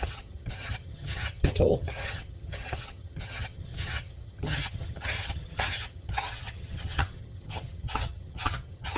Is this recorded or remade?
remade